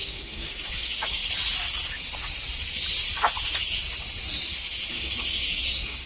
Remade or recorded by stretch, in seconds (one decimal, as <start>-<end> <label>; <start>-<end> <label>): 0.0-1.2 remade; 1.2-4.9 recorded; 4.9-6.1 remade